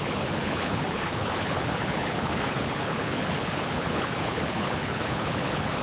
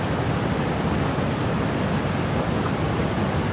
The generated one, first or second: first